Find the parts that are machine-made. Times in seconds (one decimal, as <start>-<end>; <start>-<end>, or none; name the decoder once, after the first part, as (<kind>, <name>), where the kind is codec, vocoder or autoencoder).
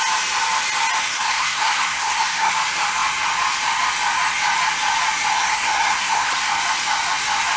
1.1-2.5 (codec, SNAC); 5.3-6.5